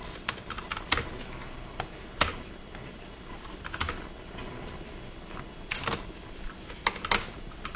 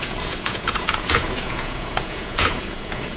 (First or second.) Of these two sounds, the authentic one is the first